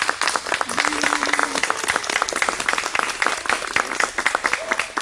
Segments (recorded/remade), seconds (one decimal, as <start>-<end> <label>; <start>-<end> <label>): 0.0-5.0 recorded